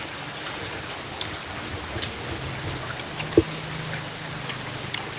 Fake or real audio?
real